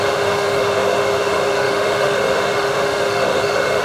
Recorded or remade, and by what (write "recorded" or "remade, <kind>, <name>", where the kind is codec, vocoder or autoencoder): remade, autoencoder, DAC-VAE